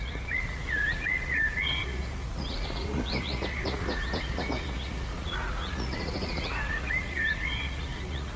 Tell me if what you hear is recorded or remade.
remade